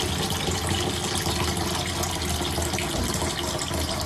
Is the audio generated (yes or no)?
no